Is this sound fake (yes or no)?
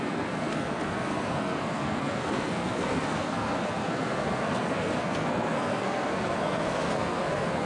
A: yes